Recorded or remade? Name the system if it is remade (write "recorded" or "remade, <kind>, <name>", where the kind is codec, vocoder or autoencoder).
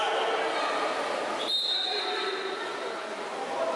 recorded